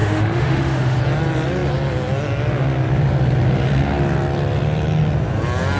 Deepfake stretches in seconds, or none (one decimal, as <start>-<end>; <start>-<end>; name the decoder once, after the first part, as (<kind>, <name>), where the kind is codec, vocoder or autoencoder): 0.0-1.0 (autoencoder, DAC-VAE)